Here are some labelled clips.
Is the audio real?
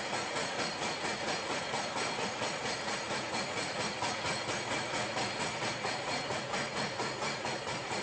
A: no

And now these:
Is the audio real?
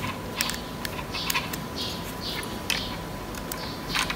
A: yes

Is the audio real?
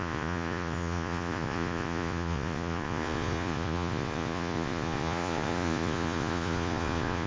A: no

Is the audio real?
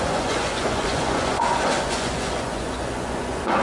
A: no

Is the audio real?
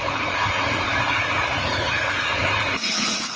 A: no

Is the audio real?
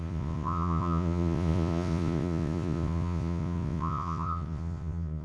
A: no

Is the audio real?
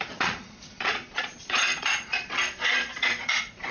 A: no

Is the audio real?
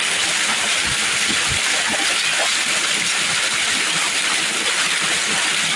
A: yes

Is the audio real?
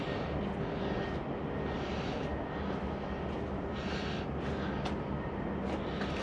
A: yes